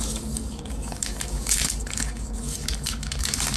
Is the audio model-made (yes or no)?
yes